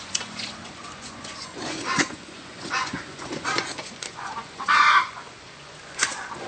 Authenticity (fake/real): fake